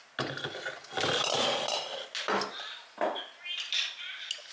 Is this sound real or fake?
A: real